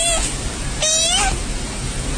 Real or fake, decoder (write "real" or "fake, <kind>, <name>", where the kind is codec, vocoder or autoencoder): real